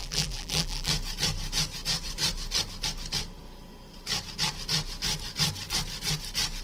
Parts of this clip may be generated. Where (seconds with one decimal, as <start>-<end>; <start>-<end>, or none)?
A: 0.0-0.9